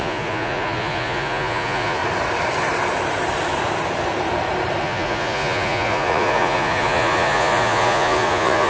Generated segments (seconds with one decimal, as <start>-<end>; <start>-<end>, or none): 0.0-2.0; 4.8-8.7